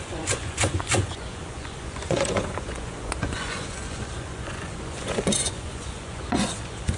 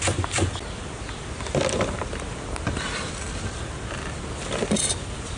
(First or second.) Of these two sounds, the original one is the second